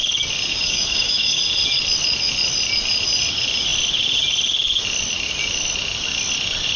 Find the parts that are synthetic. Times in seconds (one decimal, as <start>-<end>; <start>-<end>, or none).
0.5-1.4